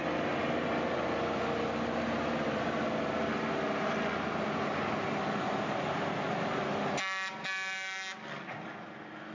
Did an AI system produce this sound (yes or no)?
no